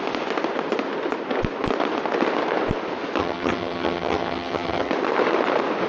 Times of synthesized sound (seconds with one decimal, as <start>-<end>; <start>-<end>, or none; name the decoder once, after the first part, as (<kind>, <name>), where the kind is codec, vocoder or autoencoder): 3.2-4.9 (vocoder, HiFi-GAN)

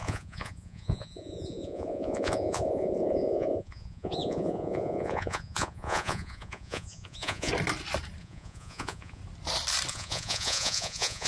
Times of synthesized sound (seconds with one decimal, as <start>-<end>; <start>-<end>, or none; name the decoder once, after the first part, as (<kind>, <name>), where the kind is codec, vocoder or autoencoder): 0.0-7.5 (vocoder, Vocos); 8.2-9.2; 9.9-11.3